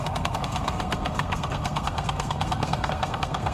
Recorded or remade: remade